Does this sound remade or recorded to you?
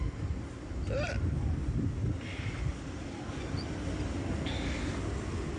recorded